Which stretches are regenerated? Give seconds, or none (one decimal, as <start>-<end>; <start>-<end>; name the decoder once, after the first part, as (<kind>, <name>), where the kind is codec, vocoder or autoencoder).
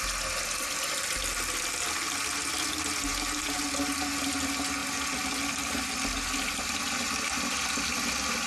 3.1-3.6 (vocoder, BigVGAN v2)